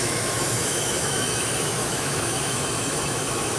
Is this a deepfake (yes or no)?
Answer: yes